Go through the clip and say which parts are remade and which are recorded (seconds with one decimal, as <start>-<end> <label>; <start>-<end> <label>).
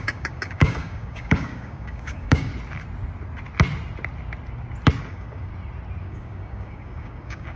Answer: 0.0-2.5 remade; 2.5-5.1 recorded; 5.1-5.5 remade; 5.5-6.0 recorded; 6.0-7.6 remade